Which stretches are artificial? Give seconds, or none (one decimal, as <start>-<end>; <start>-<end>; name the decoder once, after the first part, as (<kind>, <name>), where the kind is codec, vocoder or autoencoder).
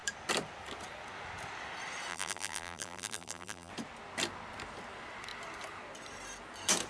2.1-3.7 (vocoder, BigVGAN v2)